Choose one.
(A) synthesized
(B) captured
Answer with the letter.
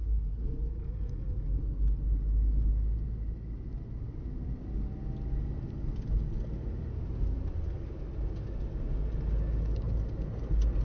B